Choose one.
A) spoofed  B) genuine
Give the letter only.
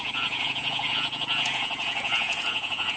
A